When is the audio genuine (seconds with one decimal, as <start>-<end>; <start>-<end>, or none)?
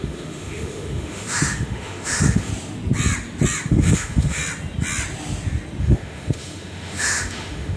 2.5-3.7; 4.4-5.8